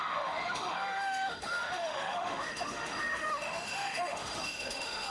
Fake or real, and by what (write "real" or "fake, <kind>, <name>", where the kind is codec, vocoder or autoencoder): fake, autoencoder, DAC-VAE